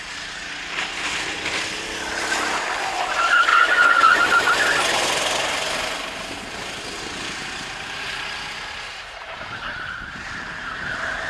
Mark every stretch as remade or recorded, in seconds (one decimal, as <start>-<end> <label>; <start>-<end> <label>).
0.0-3.5 recorded; 3.5-4.2 remade; 4.2-11.3 recorded